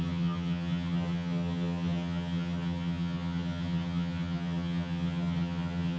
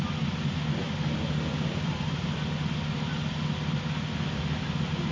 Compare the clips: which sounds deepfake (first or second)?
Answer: first